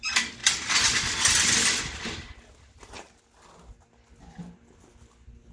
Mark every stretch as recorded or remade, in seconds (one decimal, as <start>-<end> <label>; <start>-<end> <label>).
0.0-5.5 recorded